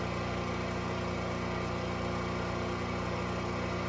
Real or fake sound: real